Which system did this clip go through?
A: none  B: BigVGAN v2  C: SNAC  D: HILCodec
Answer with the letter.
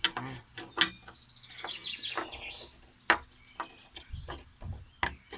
A